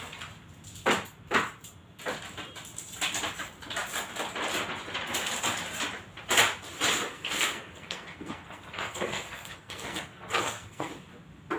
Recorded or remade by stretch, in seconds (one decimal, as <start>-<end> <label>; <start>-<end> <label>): 0.0-7.1 recorded; 7.1-10.9 remade; 10.9-11.6 recorded